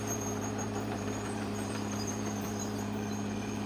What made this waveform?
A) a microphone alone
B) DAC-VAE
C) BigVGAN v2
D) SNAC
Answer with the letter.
C